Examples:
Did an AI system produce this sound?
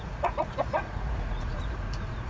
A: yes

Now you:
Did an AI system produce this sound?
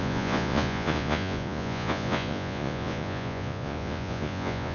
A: yes